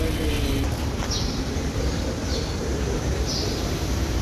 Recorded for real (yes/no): yes